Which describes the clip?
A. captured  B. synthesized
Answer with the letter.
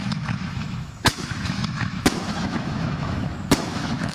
B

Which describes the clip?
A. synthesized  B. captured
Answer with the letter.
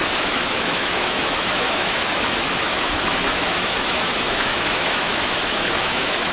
A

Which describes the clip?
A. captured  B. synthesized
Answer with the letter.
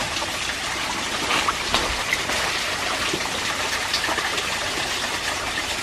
A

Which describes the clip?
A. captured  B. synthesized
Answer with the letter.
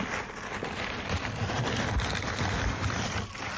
A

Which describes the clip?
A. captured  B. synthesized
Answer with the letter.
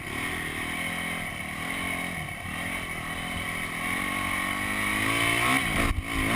A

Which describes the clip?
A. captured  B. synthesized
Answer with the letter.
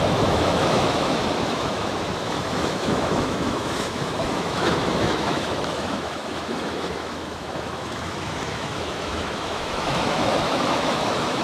B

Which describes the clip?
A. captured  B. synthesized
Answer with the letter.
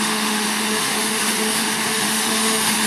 B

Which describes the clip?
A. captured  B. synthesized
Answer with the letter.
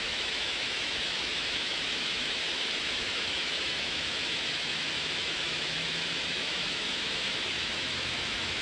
B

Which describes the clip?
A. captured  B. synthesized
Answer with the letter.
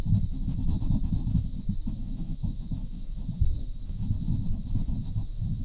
B